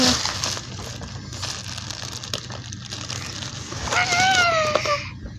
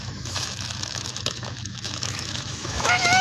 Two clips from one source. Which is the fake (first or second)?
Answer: second